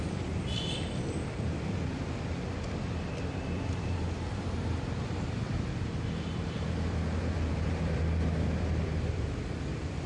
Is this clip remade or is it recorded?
remade